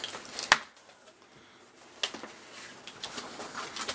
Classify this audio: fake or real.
real